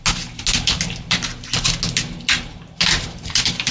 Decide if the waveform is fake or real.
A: real